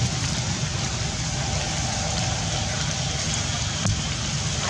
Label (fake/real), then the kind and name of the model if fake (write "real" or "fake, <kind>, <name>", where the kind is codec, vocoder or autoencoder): real